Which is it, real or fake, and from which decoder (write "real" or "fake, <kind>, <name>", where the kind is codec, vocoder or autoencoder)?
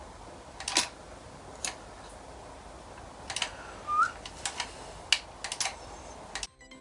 real